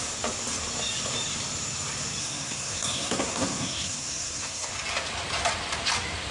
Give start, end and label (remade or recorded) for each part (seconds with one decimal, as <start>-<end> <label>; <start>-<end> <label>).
0.0-2.2 recorded; 2.2-4.7 remade; 4.7-6.3 recorded